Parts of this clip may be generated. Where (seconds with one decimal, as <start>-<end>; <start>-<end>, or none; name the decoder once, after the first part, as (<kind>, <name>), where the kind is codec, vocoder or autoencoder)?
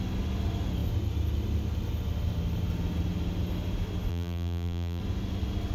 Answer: 4.1-5.0 (vocoder, BigVGAN v2)